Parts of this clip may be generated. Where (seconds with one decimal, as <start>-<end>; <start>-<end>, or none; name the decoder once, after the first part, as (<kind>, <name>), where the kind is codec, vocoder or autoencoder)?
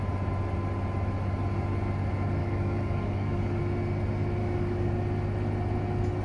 2.4-3.6 (codec, DAC); 4.4-4.9